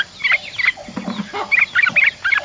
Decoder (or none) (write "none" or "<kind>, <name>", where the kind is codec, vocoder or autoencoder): none